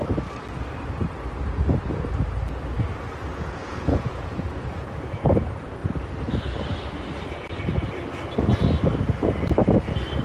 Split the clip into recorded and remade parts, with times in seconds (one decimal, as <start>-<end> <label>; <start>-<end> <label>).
0.0-3.3 recorded; 3.3-4.9 remade; 4.9-10.2 recorded